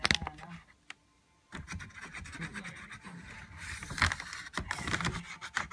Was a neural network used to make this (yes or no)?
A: no